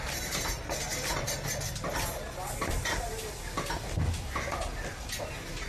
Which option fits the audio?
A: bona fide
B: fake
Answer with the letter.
A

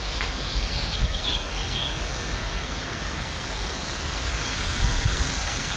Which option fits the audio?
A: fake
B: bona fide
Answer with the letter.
A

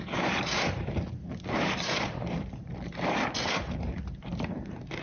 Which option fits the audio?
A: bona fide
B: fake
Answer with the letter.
B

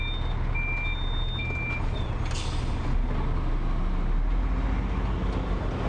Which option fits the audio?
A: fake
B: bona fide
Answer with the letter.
B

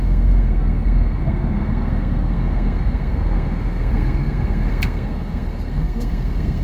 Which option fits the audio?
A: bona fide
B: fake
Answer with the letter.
B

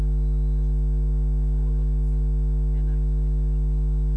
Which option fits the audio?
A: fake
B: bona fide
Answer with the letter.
B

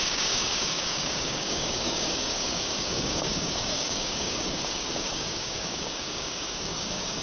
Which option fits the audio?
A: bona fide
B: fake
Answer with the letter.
B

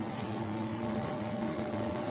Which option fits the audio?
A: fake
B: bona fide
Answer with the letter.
A